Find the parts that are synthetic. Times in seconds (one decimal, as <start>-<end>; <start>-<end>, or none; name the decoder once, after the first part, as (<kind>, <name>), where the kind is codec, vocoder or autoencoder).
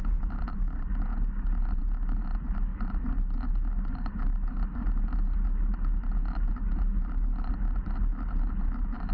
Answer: none